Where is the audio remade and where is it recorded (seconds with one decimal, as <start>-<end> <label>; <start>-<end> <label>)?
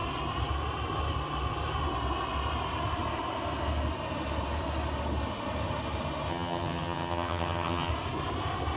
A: 0.0-6.3 recorded; 6.3-7.9 remade; 7.9-8.8 recorded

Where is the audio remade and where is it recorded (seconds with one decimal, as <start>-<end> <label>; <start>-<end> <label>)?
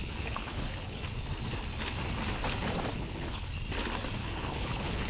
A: 0.0-1.0 remade; 1.0-2.9 recorded; 2.9-3.5 remade; 3.5-4.2 recorded; 4.2-5.1 remade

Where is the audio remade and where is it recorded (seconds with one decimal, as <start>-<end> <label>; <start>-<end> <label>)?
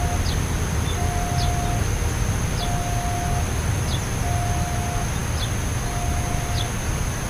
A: 0.0-7.3 recorded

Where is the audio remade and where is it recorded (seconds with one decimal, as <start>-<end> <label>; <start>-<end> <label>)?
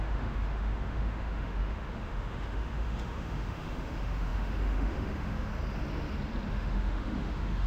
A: 0.0-5.5 remade; 5.5-6.5 recorded; 6.5-7.7 remade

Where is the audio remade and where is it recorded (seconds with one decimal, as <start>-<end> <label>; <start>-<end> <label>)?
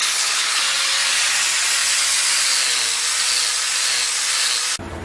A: 0.0-0.6 remade; 0.6-5.0 recorded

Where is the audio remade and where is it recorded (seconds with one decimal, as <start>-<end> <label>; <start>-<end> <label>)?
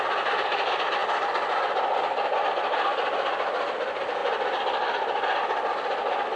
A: 0.0-6.4 recorded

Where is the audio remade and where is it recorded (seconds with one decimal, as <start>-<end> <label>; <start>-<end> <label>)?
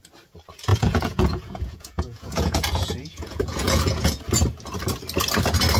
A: 0.0-0.7 recorded; 0.7-4.2 remade; 4.2-5.8 recorded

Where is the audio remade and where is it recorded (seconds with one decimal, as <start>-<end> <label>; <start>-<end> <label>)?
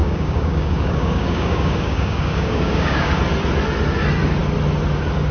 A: 0.0-3.2 remade; 3.2-5.3 recorded